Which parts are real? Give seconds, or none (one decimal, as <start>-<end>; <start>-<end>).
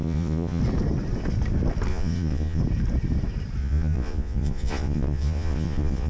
0.6-1.9; 2.6-3.6